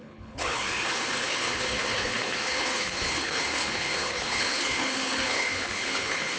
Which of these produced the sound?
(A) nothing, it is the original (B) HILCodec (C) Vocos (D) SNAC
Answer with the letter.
B